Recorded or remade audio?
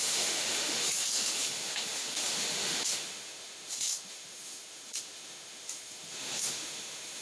remade